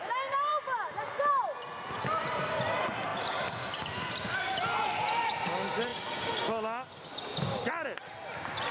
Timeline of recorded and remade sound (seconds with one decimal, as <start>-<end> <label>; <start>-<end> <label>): 0.0-8.7 recorded